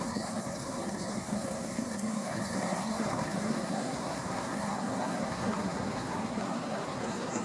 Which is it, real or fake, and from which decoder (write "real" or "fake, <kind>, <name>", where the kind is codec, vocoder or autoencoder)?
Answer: fake, codec, SNAC